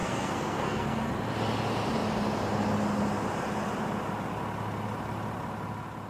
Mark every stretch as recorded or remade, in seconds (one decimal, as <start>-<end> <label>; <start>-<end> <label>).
0.0-1.1 remade; 1.1-6.1 recorded